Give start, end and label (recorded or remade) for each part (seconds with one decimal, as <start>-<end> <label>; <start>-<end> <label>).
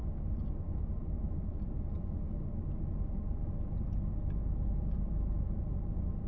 0.0-4.4 recorded; 4.4-5.1 remade; 5.1-6.3 recorded